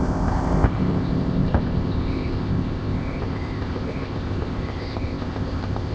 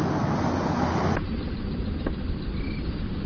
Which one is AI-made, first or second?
first